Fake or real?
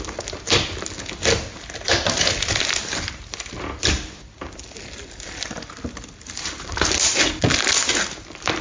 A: real